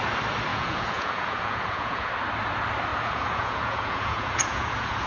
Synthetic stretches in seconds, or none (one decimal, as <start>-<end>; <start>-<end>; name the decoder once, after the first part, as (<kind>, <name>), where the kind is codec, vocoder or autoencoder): 0.5-2.1 (vocoder, Vocos); 2.9-5.1